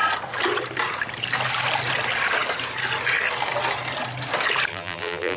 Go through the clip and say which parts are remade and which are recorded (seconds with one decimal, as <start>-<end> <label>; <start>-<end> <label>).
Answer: 0.0-4.7 recorded; 4.7-5.4 remade